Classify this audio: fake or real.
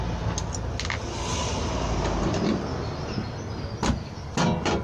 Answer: real